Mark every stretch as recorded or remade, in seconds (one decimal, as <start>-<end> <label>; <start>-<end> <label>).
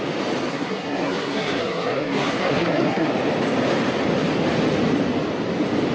0.0-0.5 recorded; 0.5-3.1 remade; 3.1-5.9 recorded